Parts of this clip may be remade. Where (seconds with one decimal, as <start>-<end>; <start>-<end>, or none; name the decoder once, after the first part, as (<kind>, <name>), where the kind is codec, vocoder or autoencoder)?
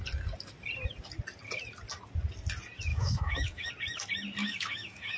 2.9-3.7 (autoencoder, DAC-VAE); 4.4-5.2